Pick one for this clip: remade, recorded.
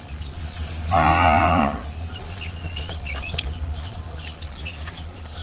remade